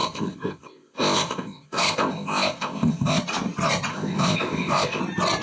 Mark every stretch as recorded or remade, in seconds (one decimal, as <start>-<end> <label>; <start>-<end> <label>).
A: 0.0-3.2 remade; 3.2-3.9 recorded; 3.9-5.0 remade; 5.0-5.4 recorded